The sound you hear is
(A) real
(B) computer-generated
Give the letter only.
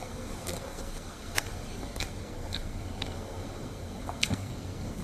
B